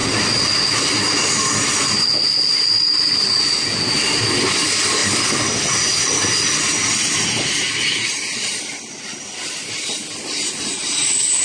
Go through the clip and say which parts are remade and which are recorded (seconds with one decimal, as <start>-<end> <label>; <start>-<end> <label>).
0.0-11.4 recorded